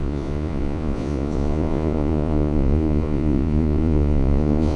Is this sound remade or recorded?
remade